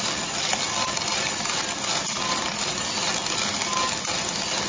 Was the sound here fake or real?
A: real